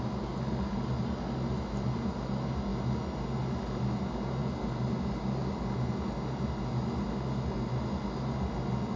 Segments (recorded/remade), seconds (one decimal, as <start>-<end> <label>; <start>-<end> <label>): 0.0-9.0 recorded